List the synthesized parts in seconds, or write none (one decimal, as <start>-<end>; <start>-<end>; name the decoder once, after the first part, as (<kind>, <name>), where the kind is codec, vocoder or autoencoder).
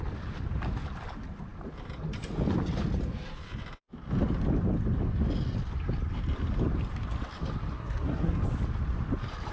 7.7-8.4 (codec, SNAC)